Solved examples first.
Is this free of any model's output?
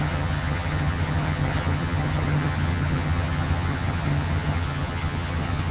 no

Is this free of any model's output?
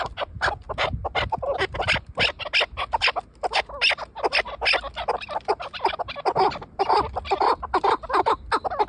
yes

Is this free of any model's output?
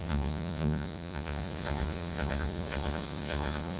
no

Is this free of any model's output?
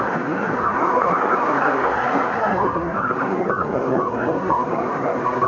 no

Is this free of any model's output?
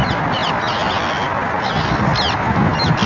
yes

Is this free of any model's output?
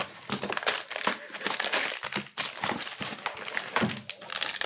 yes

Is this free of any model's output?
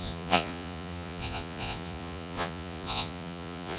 no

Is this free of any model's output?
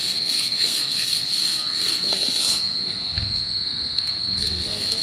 no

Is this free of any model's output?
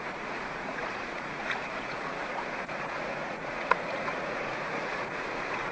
no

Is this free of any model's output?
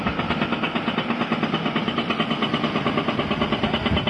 no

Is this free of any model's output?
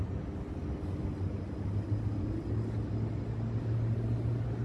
yes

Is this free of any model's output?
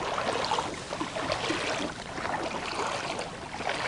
yes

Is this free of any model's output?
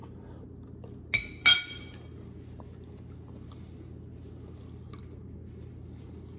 yes